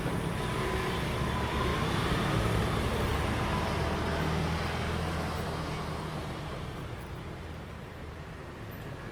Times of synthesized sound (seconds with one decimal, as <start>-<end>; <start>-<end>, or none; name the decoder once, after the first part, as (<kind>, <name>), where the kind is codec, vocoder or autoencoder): 0.0-1.7 (vocoder, BigVGAN v2); 2.6-3.1; 6.0-9.1